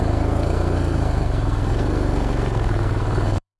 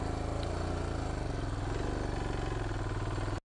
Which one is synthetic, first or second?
first